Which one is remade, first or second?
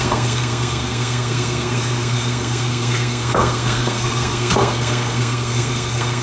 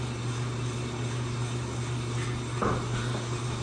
first